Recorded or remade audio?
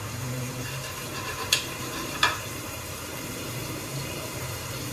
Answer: remade